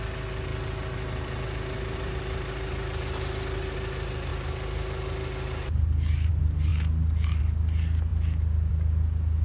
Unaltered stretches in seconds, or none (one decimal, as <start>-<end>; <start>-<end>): 0.0-9.4